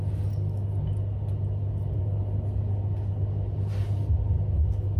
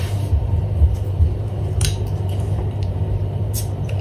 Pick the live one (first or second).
first